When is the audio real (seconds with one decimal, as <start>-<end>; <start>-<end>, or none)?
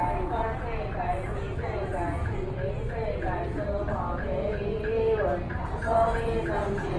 0.0-7.0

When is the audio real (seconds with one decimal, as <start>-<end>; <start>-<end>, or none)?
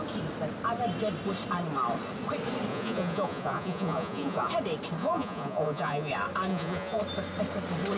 0.0-2.7; 4.5-5.0; 6.1-6.5; 7.0-8.0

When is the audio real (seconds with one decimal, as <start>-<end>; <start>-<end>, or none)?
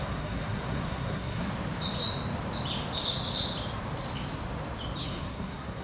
1.5-5.0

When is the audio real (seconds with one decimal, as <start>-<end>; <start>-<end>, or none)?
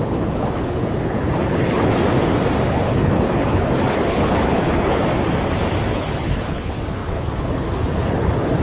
2.0-2.7; 5.1-5.9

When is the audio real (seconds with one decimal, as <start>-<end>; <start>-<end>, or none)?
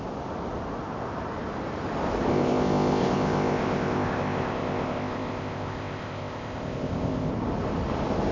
0.0-2.3; 7.3-8.3